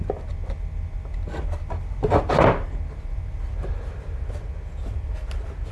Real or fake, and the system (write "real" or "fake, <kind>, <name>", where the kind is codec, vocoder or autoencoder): real